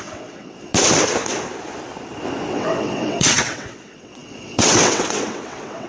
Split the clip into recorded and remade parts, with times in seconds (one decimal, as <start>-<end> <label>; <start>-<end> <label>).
0.0-0.7 remade; 0.7-2.5 recorded; 2.5-5.9 remade